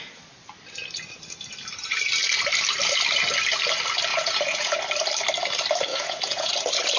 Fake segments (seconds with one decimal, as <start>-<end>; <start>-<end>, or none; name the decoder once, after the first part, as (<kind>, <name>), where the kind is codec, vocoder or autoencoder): 4.1-4.8 (vocoder, Vocos); 5.9-6.5